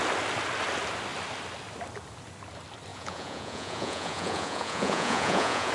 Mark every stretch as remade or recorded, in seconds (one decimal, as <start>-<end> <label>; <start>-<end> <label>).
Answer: 0.0-2.9 recorded; 2.9-5.7 remade